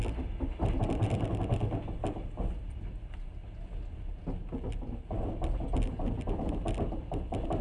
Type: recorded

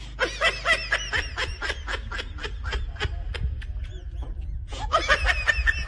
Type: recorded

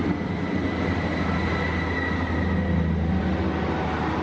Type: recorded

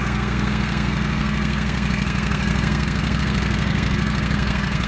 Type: remade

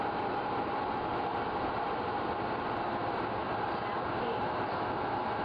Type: recorded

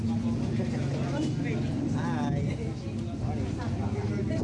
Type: recorded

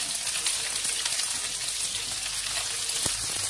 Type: recorded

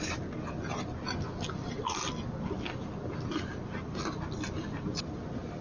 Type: recorded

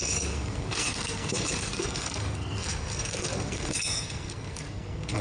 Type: remade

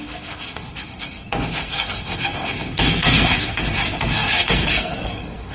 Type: remade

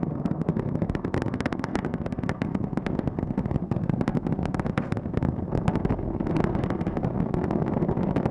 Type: remade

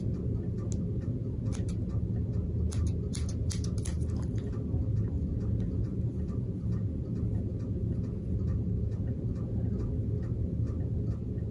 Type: recorded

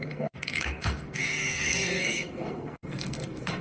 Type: remade